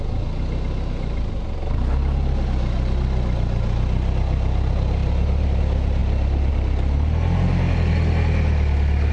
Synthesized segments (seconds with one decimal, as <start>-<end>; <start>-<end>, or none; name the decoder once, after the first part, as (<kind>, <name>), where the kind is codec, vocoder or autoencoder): 5.0-5.6 (vocoder, BigVGAN v2)